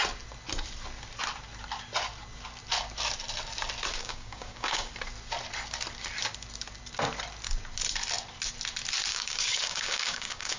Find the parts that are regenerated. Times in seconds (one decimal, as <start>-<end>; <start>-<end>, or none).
4.0-4.9; 9.1-10.6